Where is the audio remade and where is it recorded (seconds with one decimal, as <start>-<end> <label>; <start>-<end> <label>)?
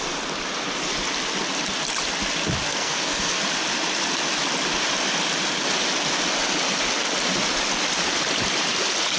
0.0-2.7 recorded; 2.7-3.4 remade; 3.4-9.2 recorded